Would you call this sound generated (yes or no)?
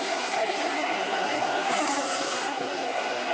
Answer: yes